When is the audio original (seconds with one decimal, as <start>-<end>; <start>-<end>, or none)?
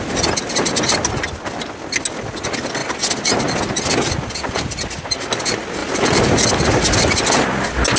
0.0-8.0